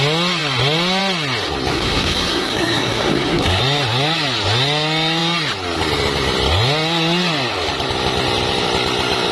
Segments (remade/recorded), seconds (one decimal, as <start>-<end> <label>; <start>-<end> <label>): 0.0-1.7 recorded; 1.7-3.6 remade; 3.6-9.3 recorded